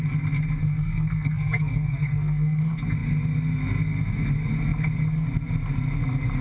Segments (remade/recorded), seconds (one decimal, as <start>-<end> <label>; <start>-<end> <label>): 0.0-0.6 recorded; 0.6-2.6 remade; 2.6-6.4 recorded